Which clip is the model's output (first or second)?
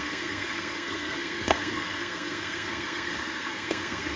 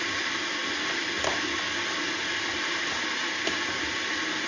first